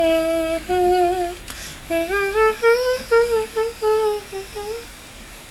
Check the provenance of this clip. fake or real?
fake